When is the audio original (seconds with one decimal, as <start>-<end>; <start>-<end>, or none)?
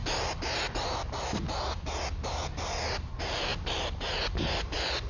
0.0-5.1